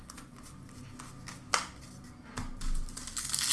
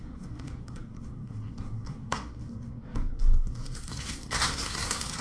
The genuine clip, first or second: first